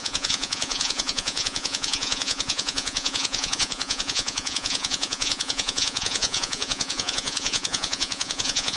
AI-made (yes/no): yes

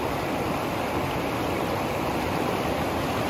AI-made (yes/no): no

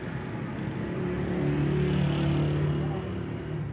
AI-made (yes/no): no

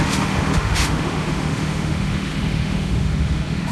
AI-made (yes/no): yes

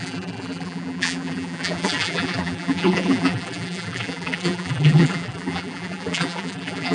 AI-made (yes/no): yes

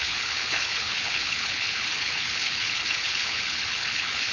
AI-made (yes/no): yes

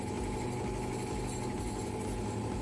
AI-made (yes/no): no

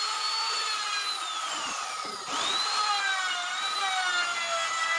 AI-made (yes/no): no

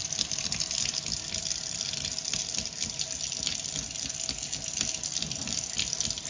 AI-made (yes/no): no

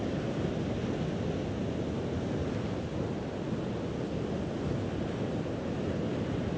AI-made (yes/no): no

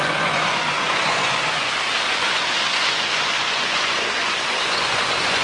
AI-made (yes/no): yes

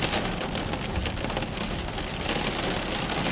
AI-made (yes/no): no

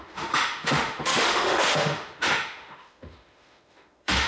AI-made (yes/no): yes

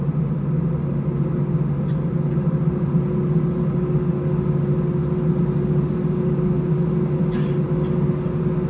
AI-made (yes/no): no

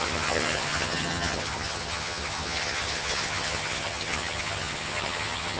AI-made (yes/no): yes